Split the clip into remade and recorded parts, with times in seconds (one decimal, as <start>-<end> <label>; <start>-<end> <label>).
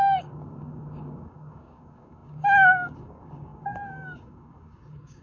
0.0-5.2 remade